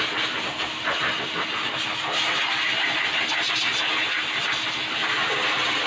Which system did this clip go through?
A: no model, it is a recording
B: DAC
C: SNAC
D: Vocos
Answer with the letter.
A